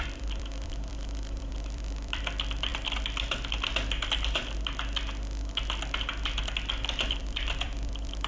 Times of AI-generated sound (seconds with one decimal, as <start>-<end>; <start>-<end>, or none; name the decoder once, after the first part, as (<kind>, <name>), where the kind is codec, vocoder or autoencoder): 0.0-0.9 (vocoder, BigVGAN v2); 1.4-2.7; 7.2-8.3